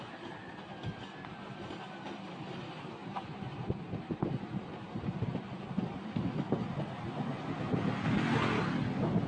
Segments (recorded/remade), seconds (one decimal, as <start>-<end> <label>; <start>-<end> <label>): 0.0-3.0 recorded; 3.0-6.2 remade; 6.2-9.3 recorded